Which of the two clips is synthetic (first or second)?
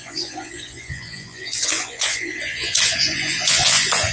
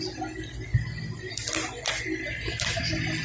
first